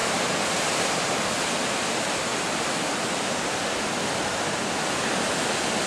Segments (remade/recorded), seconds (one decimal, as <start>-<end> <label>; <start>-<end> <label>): 0.0-1.2 remade; 1.2-5.9 recorded